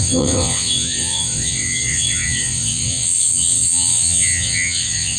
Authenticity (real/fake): fake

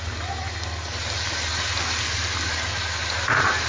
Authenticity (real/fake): real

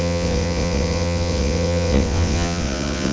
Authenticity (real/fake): fake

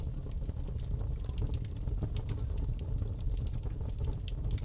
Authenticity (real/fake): real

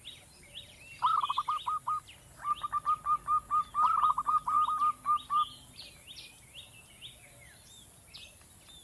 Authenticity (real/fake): real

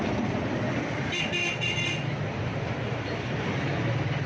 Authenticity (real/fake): real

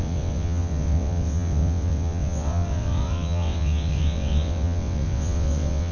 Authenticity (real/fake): fake